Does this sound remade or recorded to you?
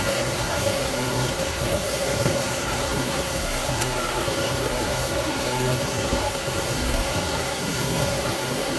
remade